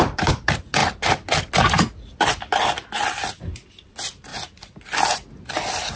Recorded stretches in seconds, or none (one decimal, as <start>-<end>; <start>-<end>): 0.0-6.0